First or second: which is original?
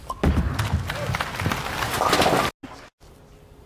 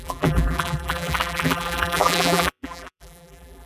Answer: first